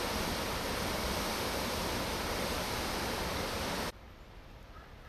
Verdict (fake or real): real